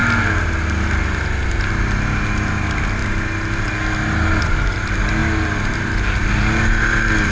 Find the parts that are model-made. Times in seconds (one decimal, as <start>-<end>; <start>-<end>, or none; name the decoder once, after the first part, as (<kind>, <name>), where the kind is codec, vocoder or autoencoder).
none